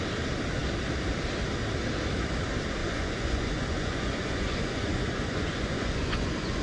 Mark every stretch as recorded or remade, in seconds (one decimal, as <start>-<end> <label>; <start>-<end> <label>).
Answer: 0.0-2.8 recorded; 2.8-6.6 remade